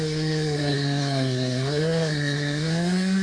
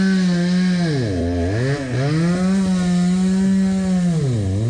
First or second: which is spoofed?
first